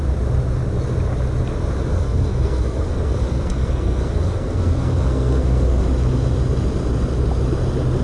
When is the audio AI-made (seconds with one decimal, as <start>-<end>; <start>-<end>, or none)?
1.9-5.8